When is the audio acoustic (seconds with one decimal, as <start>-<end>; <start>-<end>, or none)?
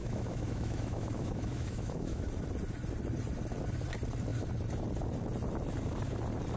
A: 2.3-6.6